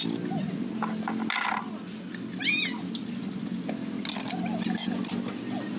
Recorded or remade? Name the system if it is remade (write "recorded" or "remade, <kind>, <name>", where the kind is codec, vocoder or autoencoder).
recorded